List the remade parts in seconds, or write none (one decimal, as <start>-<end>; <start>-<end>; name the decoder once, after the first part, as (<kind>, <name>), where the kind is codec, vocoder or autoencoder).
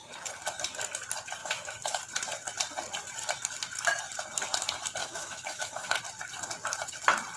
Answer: 1.4-2.0 (autoencoder, DAC-VAE); 5.0-6.0